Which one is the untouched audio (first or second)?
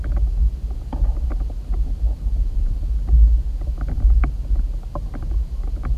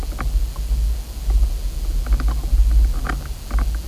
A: second